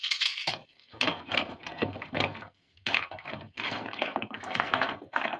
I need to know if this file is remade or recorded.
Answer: remade